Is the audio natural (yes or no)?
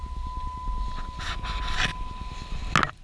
yes